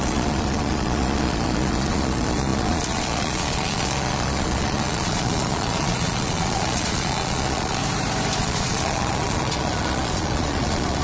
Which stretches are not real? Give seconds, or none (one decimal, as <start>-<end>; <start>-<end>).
0.0-7.8; 8.4-11.0